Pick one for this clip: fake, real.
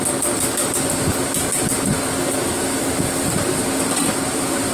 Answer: real